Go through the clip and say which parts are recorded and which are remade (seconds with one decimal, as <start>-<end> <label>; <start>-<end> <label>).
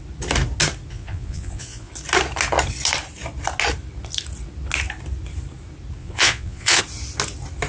0.0-0.9 recorded; 0.9-1.9 remade; 1.9-6.0 recorded; 6.0-6.8 remade; 6.8-7.7 recorded